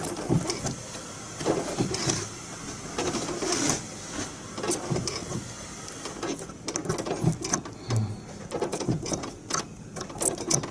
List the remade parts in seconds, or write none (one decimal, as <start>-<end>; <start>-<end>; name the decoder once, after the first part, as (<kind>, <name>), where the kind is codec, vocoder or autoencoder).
8.7-10.0 (vocoder, Vocos)